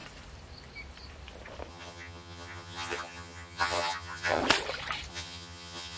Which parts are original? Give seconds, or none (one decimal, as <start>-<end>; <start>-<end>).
0.0-1.7; 4.4-5.1